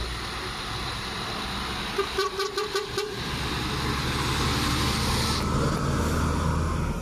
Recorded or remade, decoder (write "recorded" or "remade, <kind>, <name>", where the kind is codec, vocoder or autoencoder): recorded